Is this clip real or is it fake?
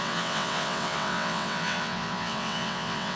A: fake